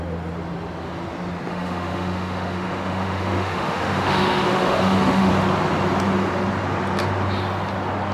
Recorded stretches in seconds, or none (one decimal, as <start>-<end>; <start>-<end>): 0.0-1.5; 5.3-8.1